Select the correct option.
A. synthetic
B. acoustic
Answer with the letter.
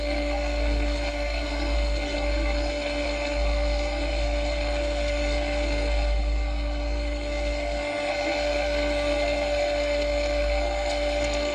A